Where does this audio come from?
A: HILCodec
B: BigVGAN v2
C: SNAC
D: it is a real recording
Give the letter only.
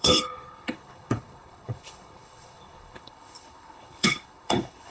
A